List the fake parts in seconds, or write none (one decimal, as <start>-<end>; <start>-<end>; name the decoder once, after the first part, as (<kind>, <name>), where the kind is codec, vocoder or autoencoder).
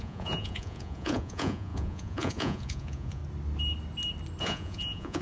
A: 0.0-3.2 (vocoder, Vocos); 4.4-5.2